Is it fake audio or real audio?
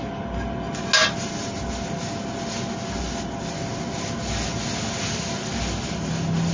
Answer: real